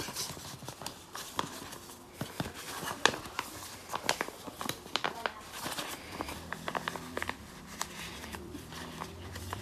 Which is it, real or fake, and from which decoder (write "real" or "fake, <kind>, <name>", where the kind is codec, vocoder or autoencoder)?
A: fake, vocoder, BigVGAN v2